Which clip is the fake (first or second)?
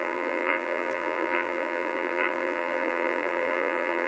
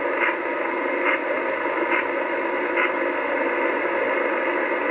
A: first